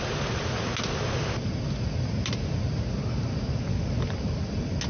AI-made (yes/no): no